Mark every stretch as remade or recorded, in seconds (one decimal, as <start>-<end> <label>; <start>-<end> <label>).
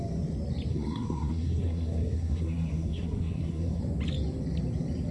0.0-0.7 recorded; 0.7-3.8 remade; 3.8-5.1 recorded